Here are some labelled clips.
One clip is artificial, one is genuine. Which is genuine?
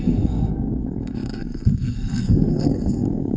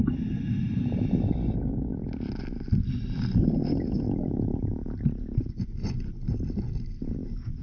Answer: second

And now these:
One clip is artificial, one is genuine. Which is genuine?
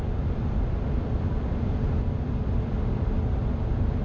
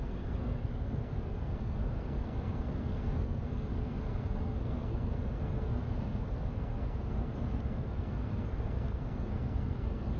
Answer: first